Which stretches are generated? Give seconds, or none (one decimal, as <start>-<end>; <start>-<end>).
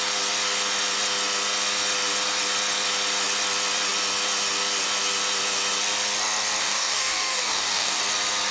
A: 6.6-8.0